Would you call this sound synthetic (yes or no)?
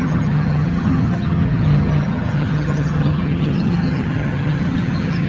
yes